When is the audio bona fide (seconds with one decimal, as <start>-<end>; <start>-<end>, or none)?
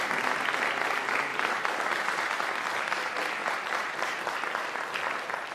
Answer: 0.0-1.3; 2.3-3.4; 4.2-5.5